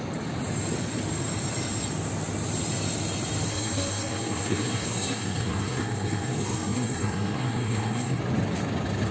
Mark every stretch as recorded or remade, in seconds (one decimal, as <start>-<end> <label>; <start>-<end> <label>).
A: 0.0-3.5 recorded; 3.5-8.2 remade; 8.2-9.1 recorded